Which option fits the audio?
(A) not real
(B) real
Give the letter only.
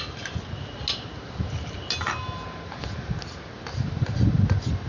B